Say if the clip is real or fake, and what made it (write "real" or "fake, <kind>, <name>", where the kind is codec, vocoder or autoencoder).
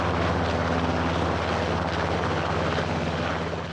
real